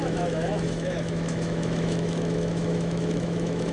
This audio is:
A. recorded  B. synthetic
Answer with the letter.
B